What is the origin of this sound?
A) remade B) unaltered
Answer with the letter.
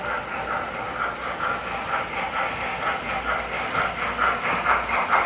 B